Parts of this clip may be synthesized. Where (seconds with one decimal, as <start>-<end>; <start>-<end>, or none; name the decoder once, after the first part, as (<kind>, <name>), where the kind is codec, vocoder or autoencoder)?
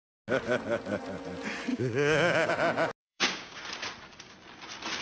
1.7-2.5 (codec, DAC); 3.0-3.6